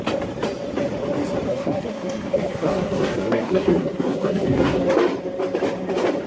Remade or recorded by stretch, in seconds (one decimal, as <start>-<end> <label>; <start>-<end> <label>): 0.0-1.5 recorded; 1.5-4.8 remade; 4.8-6.3 recorded